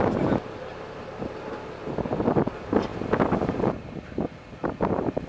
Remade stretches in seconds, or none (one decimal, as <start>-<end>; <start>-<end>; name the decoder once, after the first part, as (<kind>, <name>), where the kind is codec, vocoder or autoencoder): none